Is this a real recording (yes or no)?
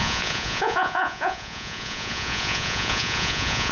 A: no